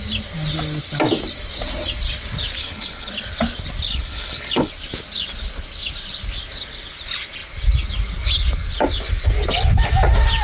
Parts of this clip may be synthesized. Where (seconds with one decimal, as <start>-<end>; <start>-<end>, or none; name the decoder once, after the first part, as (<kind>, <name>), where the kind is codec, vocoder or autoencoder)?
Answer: 2.6-3.1 (codec, HILCodec); 3.9-4.7